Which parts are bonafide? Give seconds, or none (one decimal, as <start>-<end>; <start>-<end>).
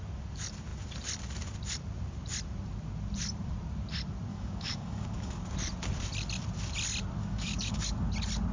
0.0-4.3; 5.4-7.2; 7.9-8.5